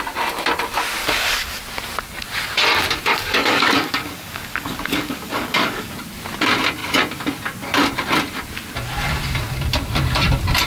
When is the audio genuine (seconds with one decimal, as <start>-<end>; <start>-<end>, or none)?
0.0-1.0; 1.6-3.1; 5.9-10.7